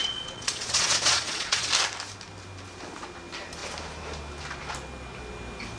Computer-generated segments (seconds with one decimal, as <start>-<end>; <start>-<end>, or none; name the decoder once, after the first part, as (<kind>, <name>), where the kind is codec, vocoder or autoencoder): 0.0-1.7 (vocoder, Vocos)